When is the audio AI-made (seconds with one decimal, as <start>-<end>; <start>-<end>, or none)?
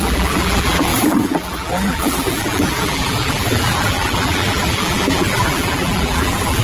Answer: 0.0-6.6